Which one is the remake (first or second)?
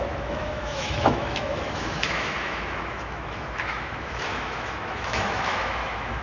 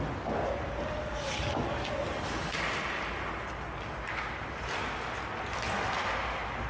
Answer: first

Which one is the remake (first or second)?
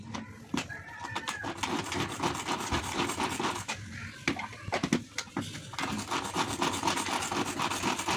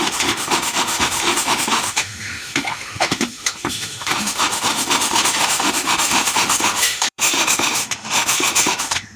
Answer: second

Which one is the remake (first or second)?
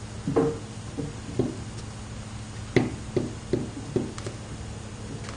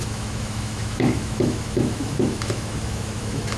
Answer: second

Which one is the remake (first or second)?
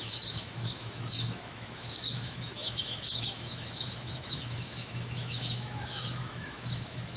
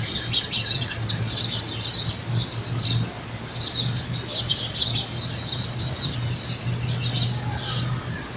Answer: first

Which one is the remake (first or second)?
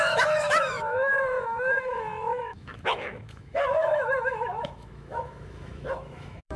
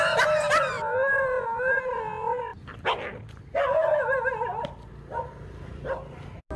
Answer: first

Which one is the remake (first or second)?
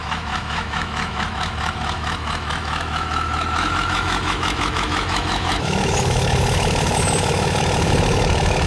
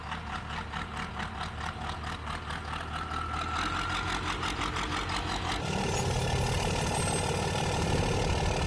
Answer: first